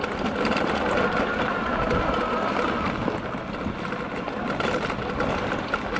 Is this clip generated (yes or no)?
no